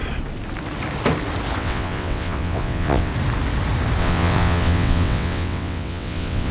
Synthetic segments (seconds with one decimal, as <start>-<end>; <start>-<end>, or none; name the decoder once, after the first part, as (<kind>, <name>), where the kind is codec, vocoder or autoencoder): 1.6-3.1 (vocoder, WaveNeXt); 4.0-6.5